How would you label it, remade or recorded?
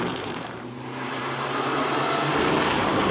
remade